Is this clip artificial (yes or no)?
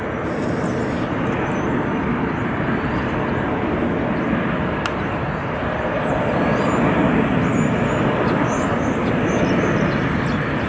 no